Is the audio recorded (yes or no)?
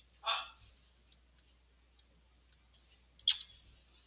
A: yes